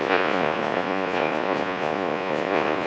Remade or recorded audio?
remade